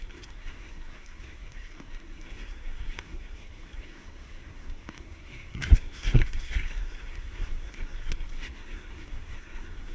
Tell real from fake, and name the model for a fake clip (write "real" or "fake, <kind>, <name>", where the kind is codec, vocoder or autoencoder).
fake, codec, SNAC